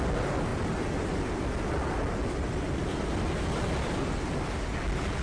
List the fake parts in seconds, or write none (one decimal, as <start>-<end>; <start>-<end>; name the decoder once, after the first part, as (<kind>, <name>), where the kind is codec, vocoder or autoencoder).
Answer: none